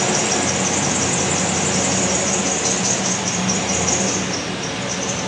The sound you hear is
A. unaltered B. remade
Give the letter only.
B